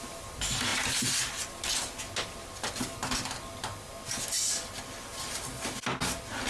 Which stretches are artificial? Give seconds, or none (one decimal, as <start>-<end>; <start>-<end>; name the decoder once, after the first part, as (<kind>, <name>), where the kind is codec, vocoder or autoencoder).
none